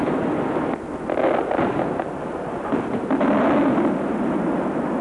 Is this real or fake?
real